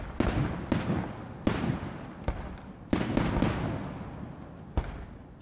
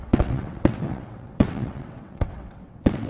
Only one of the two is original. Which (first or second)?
first